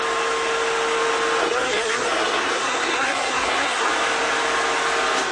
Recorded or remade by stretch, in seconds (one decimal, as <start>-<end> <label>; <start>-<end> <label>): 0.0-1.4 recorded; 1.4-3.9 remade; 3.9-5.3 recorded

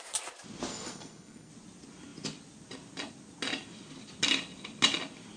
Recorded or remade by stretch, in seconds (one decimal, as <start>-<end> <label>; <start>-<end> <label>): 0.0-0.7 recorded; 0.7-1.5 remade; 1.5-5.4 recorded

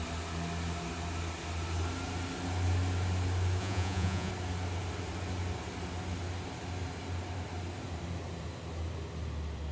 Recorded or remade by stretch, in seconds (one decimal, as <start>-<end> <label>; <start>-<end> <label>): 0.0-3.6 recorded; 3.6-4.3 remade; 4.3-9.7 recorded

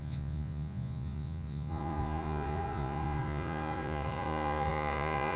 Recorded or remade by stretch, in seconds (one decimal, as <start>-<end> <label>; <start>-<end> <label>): 0.0-5.4 remade

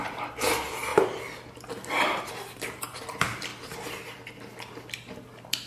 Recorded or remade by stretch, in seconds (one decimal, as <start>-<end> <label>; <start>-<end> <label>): 0.0-0.9 remade; 0.9-2.2 recorded; 2.2-3.5 remade; 3.5-4.8 recorded; 4.8-5.7 remade

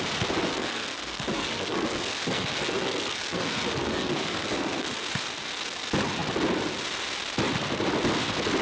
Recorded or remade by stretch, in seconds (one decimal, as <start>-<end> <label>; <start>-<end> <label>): 0.0-0.5 recorded; 0.5-5.0 remade; 5.0-8.6 recorded

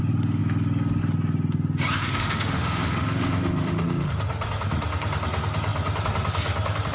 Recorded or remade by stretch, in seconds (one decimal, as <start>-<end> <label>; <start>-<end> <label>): 0.0-2.0 recorded; 2.0-4.1 remade; 4.1-6.9 recorded

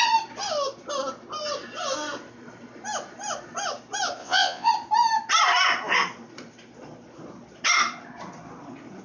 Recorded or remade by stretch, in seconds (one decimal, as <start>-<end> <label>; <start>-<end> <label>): 0.0-4.2 recorded; 4.2-4.7 remade; 4.7-9.0 recorded